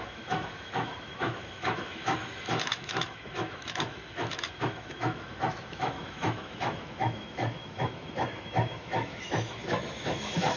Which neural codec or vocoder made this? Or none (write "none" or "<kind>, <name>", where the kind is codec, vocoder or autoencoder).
autoencoder, DAC-VAE